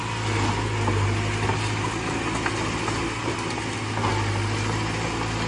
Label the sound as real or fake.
real